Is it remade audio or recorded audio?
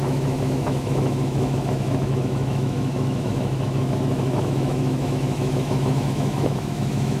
remade